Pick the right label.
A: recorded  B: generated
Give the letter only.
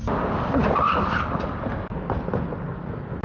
A